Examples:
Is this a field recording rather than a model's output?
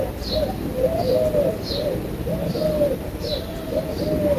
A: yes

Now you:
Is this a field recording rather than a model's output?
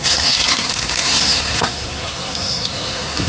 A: no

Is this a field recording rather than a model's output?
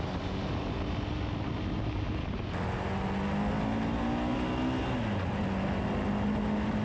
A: yes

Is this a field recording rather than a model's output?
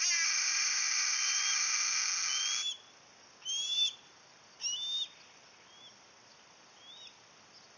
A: yes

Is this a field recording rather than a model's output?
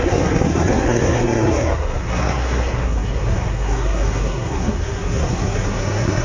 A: no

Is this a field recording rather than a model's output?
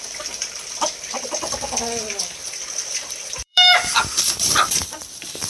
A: no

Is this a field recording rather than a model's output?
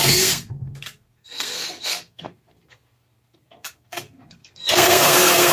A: no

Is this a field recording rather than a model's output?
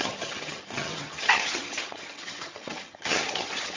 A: no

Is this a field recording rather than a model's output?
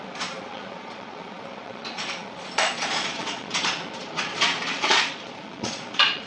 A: no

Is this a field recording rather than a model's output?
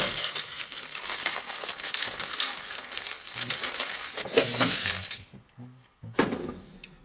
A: no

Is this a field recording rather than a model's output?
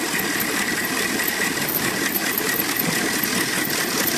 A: yes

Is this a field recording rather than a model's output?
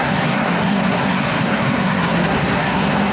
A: no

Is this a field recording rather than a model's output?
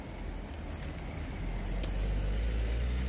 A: yes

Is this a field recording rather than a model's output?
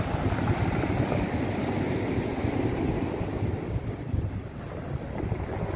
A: yes